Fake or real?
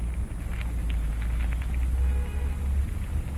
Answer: real